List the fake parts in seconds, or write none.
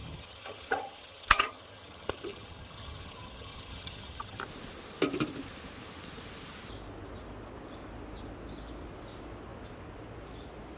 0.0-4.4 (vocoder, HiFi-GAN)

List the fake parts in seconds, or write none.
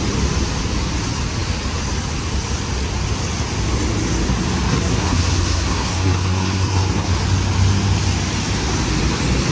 4.7-7.1 (codec, SNAC)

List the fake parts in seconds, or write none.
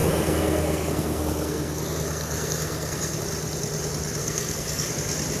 0.0-3.2 (codec, SNAC); 4.2-4.9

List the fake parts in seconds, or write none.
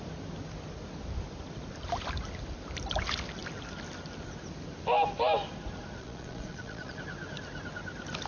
6.0-7.0 (vocoder, Vocos)